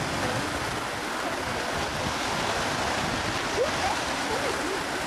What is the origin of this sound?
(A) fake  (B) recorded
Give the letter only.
B